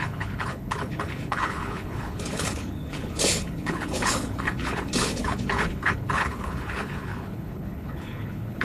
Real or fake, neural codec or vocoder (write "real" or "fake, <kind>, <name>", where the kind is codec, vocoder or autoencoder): fake, codec, HILCodec